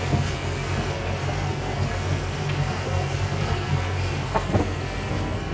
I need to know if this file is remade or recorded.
remade